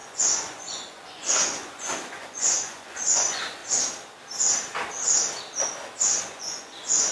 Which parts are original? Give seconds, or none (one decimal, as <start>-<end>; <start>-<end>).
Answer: 3.6-6.2